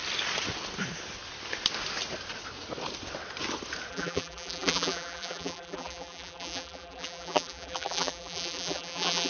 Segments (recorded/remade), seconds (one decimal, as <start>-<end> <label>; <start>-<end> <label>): 0.0-3.9 recorded; 3.9-9.3 remade